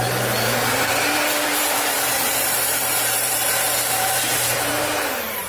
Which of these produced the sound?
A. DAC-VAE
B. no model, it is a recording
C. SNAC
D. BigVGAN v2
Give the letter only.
D